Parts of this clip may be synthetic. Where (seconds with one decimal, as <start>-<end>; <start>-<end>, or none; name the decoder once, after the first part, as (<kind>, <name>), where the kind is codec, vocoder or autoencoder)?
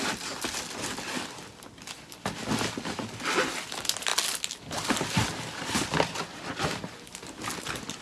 none